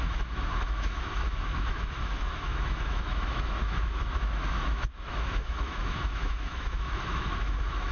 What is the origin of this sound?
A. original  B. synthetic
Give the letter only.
B